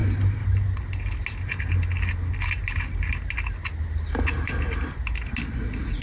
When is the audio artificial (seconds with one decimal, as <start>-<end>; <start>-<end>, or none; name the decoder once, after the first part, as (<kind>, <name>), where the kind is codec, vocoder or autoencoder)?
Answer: none